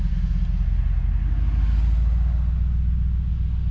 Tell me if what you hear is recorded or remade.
recorded